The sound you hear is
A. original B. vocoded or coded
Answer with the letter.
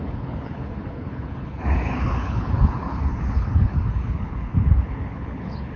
B